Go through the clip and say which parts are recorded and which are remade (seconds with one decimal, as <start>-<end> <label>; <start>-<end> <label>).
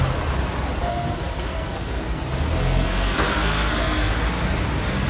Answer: 0.0-0.8 recorded; 0.8-2.2 remade; 2.2-2.6 recorded; 2.6-4.1 remade; 4.1-5.1 recorded